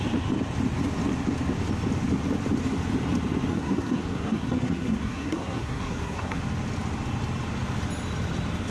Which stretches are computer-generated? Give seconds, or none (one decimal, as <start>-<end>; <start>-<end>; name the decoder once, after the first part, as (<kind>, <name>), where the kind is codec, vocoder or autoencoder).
3.5-6.4 (codec, SNAC)